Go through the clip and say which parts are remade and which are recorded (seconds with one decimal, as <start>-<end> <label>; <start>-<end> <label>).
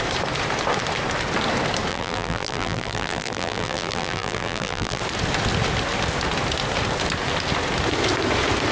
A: 0.0-1.9 recorded; 1.9-5.0 remade; 5.0-8.7 recorded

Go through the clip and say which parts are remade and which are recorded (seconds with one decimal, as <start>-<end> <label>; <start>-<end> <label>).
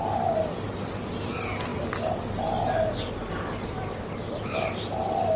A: 0.0-5.4 recorded